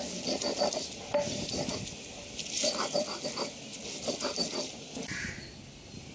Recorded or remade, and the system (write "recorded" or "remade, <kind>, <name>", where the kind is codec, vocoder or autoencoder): recorded